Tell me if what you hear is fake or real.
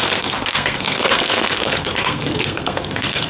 fake